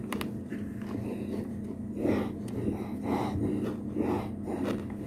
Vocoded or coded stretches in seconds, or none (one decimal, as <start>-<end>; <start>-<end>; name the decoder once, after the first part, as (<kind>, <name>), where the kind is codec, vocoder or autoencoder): none